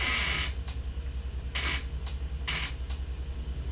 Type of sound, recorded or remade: recorded